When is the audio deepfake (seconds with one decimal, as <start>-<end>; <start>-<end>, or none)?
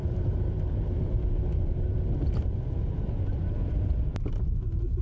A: 0.0-2.0